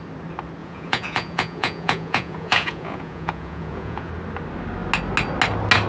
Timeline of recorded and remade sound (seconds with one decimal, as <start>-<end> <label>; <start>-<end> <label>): 0.0-0.6 recorded; 0.6-4.1 remade; 4.1-5.9 recorded